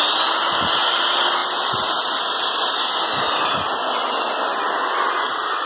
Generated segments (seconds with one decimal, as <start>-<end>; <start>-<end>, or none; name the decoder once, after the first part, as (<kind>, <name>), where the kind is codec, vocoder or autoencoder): none

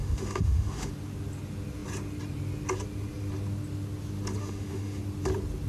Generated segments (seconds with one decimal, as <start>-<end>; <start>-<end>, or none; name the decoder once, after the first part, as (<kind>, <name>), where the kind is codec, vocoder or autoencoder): 0.0-0.9 (autoencoder, DAC-VAE); 4.4-5.0

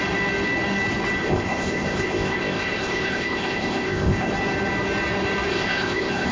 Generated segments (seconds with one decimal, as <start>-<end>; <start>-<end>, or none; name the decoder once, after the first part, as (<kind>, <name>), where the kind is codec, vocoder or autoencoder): 1.2-4.3 (codec, ZipCodec); 5.5-6.3

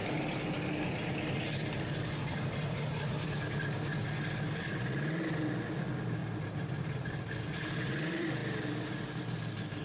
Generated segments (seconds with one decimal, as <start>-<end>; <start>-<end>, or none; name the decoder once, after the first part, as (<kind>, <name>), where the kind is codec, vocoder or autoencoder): 6.2-7.3 (vocoder, BigVGAN v2)

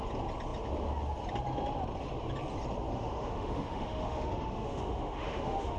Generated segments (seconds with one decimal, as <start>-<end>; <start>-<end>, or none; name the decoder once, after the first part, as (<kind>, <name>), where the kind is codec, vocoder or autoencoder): 2.9-5.8 (autoencoder, DAC-VAE)

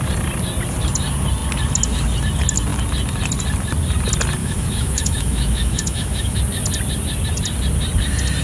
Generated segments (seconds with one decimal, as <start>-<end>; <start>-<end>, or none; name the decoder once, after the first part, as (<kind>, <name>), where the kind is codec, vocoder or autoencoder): 4.4-6.4 (autoencoder, DAC-VAE)